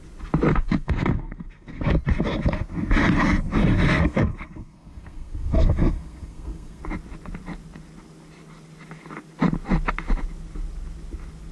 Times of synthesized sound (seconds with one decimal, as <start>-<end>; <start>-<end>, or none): 0.5-2.0; 3.9-6.8